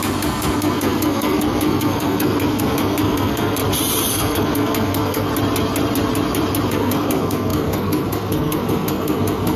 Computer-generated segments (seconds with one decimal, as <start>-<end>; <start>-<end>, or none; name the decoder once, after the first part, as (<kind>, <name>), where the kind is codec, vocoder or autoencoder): 0.0-3.6 (codec, SNAC); 4.1-5.3; 6.7-9.6